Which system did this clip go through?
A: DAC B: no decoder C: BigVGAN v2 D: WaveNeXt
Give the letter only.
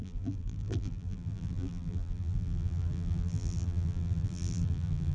C